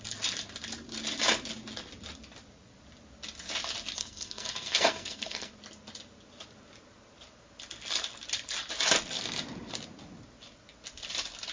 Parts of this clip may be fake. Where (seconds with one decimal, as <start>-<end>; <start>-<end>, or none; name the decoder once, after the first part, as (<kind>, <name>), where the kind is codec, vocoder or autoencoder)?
4.0-5.5 (codec, SNAC)